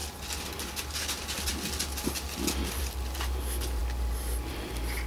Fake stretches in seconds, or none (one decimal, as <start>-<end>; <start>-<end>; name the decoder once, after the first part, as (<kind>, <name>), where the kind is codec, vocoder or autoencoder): none